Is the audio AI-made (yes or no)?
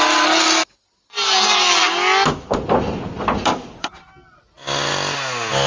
no